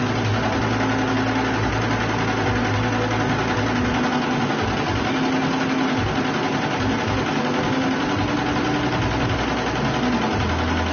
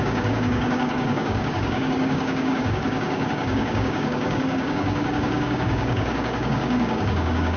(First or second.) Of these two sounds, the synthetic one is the second